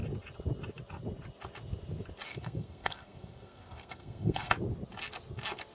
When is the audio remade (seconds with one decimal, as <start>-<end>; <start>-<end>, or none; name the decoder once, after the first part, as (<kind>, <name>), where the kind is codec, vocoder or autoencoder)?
2.3-4.5 (codec, SNAC)